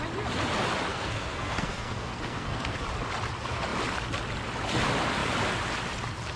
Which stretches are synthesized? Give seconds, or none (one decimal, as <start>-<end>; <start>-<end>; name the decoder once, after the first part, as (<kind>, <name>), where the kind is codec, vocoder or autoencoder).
0.9-2.8 (codec, SNAC)